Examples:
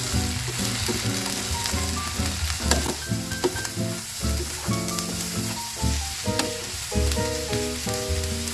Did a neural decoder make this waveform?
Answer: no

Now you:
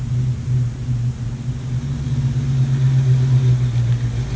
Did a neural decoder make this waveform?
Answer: no